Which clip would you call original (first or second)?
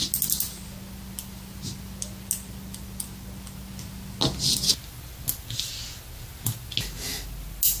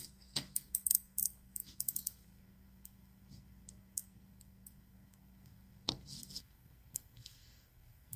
first